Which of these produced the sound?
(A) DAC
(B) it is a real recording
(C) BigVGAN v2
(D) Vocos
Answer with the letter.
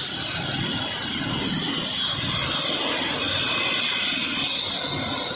B